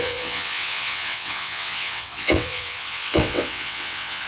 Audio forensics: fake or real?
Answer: fake